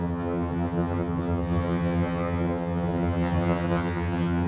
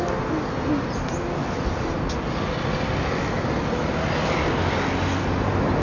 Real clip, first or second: second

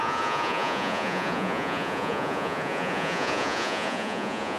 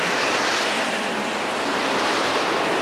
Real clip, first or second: second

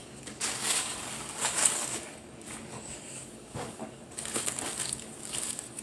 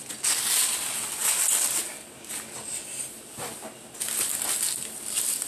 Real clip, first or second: second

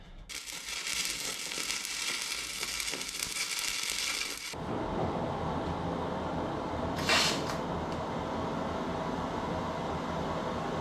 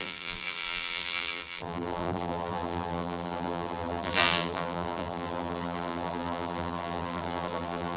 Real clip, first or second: first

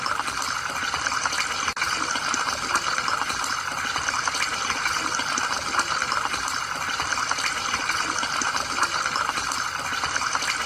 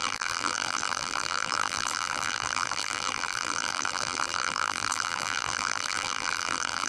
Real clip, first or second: first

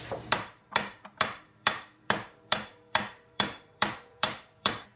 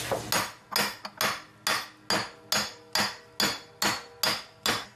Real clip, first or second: second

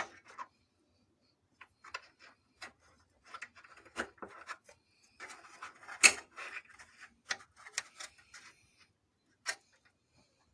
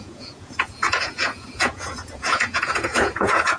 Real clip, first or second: first